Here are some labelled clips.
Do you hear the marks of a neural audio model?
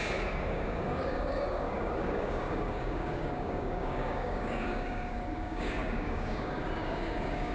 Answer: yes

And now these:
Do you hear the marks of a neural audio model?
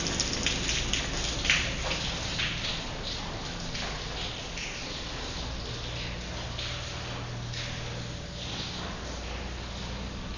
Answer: no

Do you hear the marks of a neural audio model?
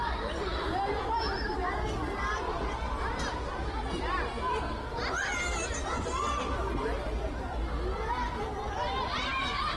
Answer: no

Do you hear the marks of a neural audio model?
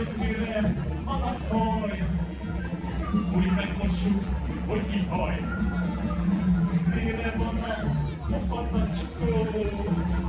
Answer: yes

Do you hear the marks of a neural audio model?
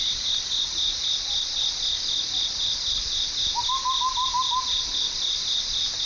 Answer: no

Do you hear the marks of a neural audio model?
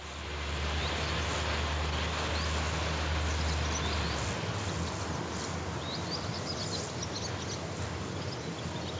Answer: no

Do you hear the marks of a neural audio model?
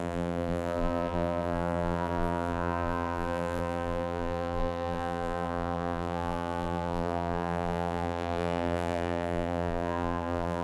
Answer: yes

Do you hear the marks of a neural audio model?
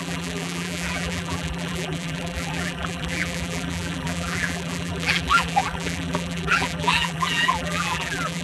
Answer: yes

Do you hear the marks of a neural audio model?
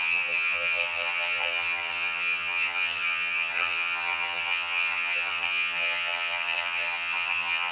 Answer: yes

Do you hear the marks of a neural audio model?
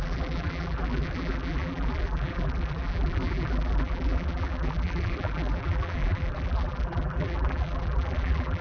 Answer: yes